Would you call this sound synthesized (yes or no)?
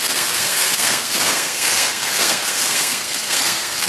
yes